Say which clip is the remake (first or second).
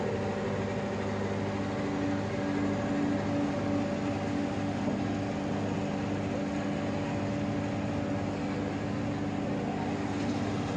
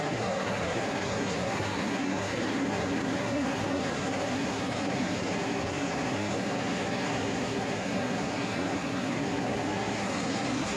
second